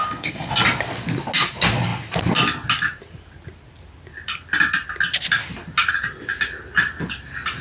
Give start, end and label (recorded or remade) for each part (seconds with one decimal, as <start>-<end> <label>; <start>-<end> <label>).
0.0-0.5 remade; 0.5-7.6 recorded